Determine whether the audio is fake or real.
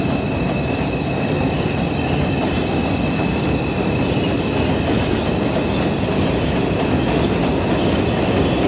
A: real